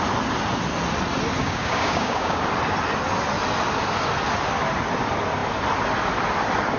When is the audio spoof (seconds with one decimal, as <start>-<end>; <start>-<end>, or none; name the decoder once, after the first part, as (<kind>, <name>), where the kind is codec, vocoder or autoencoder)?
1.4-2.4 (codec, DAC)

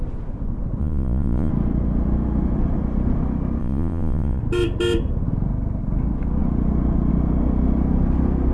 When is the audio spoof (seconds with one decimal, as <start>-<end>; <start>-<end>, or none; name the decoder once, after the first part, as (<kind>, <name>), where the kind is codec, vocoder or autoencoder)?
0.8-1.5 (vocoder, Vocos); 3.6-4.4

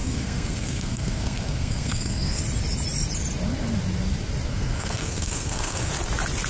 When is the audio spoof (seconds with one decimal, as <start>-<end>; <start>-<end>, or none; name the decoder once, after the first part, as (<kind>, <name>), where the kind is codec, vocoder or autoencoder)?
0.0-2.4 (codec, SNAC); 4.5-5.9

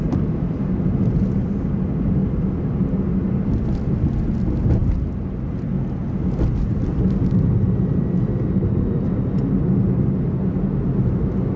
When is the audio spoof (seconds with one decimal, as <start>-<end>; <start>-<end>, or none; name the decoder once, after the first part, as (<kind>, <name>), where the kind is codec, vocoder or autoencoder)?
none

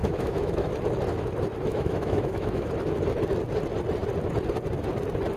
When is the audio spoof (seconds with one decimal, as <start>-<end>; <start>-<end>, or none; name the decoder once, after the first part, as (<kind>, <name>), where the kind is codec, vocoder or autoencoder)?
0.0-0.7 (autoencoder, DAC-VAE); 1.7-2.7

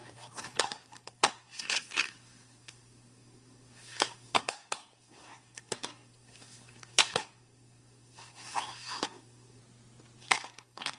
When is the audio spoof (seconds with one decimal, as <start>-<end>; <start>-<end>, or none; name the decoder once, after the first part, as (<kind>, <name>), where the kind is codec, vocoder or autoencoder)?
0.0-9.6 (codec, SNAC); 10.2-11.0

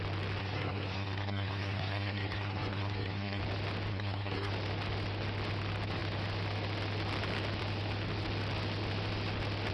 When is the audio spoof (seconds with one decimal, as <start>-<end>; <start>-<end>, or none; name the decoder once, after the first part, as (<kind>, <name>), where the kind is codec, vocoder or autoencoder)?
0.4-3.4 (codec, SNAC); 3.9-4.5